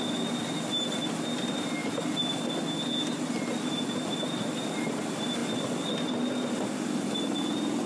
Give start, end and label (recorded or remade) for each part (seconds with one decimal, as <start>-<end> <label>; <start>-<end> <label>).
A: 0.0-7.9 recorded